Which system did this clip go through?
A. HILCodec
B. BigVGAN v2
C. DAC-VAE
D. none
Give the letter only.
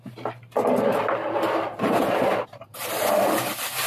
B